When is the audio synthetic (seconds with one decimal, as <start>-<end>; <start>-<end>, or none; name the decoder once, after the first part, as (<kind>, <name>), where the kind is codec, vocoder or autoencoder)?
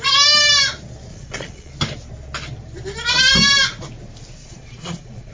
1.1-1.7 (vocoder, Vocos); 4.4-5.3